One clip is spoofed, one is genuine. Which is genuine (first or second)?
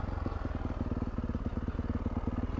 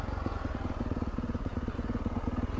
first